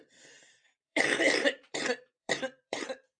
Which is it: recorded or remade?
remade